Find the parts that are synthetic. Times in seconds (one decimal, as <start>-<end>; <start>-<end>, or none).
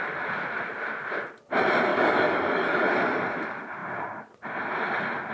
1.9-2.9